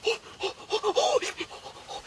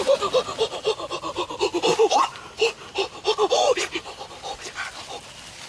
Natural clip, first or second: second